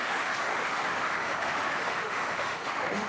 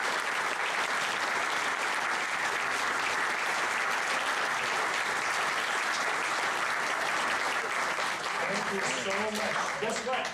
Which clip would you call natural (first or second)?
second